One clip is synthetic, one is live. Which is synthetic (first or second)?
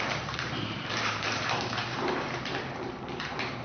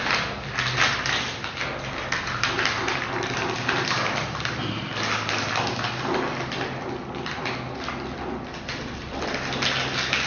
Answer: first